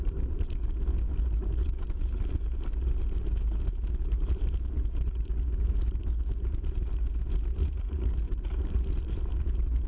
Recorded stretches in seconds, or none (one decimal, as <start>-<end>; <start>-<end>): 0.0-7.6; 8.1-9.9